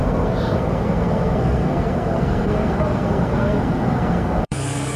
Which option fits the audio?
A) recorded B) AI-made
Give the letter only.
B